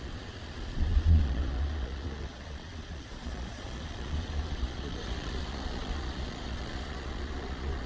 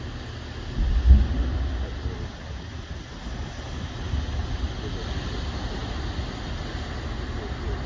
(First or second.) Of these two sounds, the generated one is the first